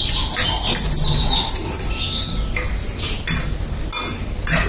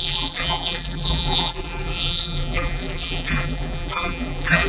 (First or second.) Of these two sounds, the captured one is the first